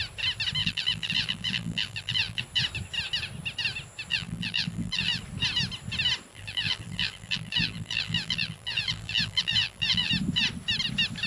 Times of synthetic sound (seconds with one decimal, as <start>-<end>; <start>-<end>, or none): 0.6-2.4; 4.1-5.2; 6.3-10.1